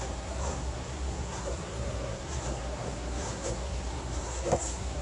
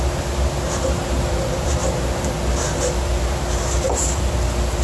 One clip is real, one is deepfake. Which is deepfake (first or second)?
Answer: first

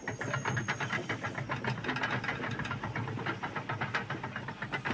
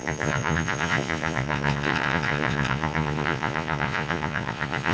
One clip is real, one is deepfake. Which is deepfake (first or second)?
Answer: second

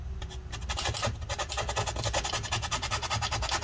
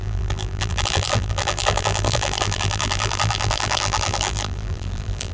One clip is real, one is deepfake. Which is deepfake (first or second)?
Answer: second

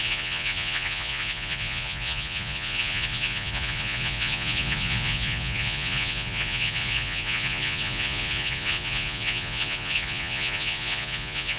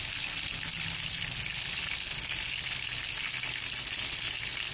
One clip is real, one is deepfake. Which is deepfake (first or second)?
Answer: first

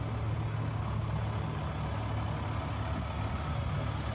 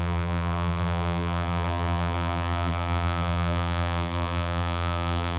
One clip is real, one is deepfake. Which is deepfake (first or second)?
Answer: second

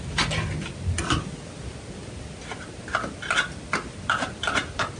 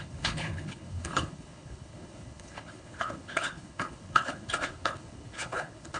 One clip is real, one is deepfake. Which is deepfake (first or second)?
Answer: second